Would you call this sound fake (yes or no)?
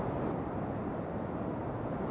no